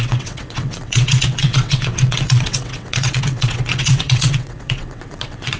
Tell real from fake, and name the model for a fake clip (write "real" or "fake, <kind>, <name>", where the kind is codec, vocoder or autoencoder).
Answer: fake, vocoder, WaveNeXt